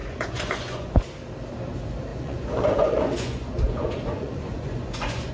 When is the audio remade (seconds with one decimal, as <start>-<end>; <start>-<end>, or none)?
0.0-1.0; 2.1-5.3